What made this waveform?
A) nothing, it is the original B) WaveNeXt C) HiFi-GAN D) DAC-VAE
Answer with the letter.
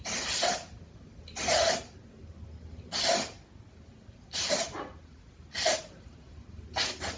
A